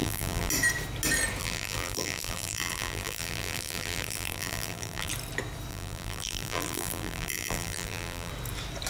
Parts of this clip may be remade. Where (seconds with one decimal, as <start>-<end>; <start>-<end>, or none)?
0.0-0.5; 1.4-5.1; 5.7-8.3